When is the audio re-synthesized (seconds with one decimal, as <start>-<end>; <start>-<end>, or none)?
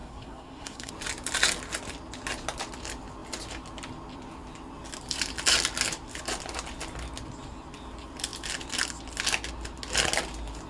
0.0-0.9